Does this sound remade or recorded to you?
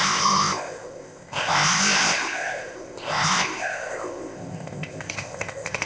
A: remade